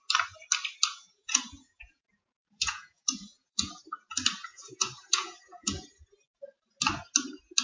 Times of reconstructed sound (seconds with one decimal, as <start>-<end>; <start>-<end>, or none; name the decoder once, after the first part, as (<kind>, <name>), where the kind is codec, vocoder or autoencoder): 0.9-3.7 (vocoder, Vocos); 4.5-6.0